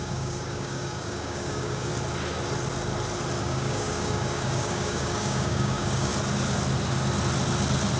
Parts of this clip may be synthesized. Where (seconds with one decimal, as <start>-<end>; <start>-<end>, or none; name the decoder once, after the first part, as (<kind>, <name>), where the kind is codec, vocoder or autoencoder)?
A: 0.0-1.9 (codec, DAC); 3.4-6.1